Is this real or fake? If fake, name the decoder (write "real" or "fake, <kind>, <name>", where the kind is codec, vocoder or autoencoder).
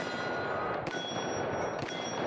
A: real